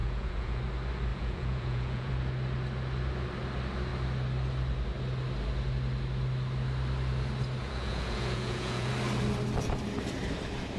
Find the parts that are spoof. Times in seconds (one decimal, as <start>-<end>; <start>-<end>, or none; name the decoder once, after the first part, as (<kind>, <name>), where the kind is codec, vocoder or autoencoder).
0.0-0.6 (vocoder, Vocos); 1.1-2.1; 7.6-8.9